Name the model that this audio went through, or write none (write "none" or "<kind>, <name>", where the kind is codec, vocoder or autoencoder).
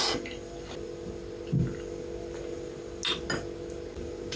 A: none